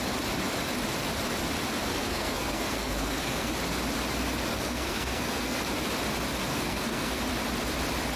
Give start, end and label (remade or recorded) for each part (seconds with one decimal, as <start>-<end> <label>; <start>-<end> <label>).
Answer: 0.0-1.9 recorded; 1.9-3.5 remade; 3.5-4.5 recorded; 4.5-5.6 remade; 5.6-6.5 recorded; 6.5-7.2 remade; 7.2-8.2 recorded